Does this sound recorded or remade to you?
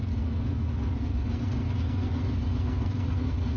remade